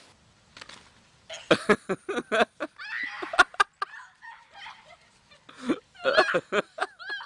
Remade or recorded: recorded